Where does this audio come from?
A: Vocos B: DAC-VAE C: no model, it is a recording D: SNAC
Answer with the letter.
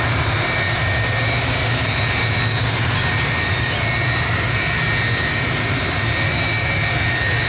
C